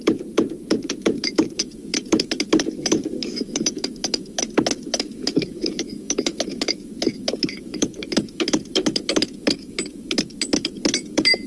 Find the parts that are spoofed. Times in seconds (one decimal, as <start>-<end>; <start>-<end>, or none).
0.0-11.5